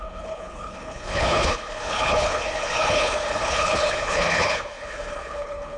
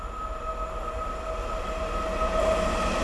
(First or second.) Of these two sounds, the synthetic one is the first